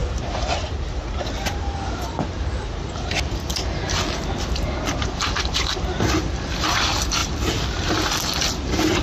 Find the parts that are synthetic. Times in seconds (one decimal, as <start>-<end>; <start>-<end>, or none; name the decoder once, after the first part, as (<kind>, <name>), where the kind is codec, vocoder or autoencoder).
4.5-7.2 (vocoder, BigVGAN v2); 8.1-9.0